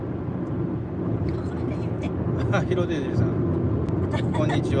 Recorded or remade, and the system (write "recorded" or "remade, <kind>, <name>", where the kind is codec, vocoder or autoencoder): recorded